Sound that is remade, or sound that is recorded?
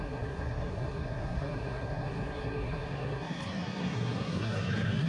remade